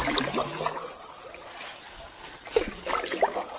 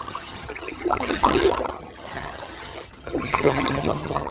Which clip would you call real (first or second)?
first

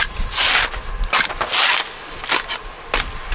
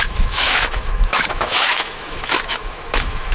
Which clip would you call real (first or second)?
first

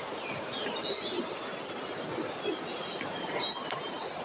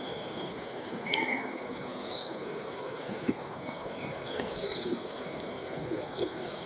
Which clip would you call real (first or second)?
first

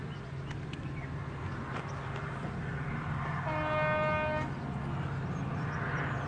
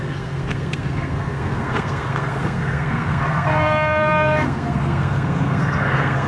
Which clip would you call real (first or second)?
first